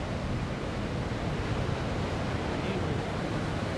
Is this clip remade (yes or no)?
no